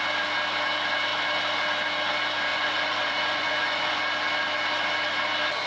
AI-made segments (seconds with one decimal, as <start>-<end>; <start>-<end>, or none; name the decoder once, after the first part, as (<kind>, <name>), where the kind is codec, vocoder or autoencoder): 2.5-4.0 (vocoder, Vocos)

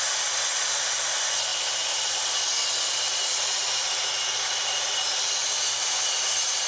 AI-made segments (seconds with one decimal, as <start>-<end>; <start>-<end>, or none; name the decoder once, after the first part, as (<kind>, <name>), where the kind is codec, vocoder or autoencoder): none

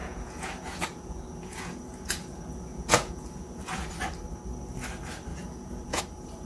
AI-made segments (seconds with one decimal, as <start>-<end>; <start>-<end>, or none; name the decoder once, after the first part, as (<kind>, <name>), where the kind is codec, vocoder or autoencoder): 0.0-3.9 (vocoder, Vocos); 5.3-6.0